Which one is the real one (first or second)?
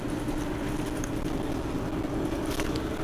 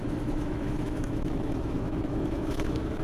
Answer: first